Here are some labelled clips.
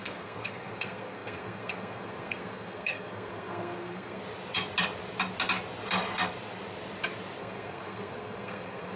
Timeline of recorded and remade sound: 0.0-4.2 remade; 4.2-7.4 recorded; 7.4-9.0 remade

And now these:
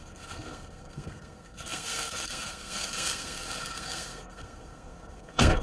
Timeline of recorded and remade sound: 0.0-5.6 remade